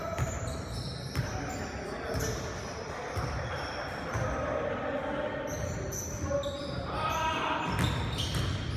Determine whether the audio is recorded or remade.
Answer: recorded